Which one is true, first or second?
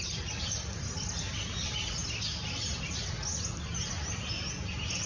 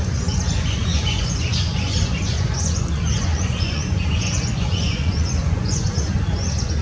first